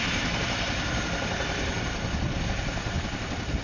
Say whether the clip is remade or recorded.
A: recorded